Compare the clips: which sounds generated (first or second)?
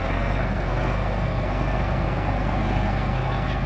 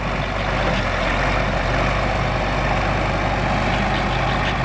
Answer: first